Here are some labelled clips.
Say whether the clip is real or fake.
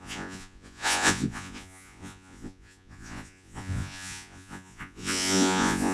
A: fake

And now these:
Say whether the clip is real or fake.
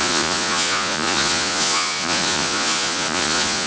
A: fake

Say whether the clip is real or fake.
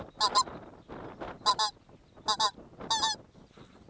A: real